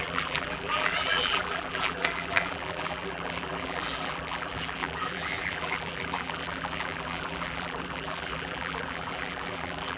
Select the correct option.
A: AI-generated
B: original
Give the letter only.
A